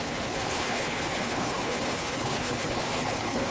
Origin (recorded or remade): remade